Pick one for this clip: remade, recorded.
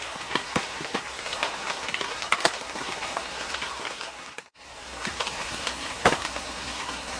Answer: remade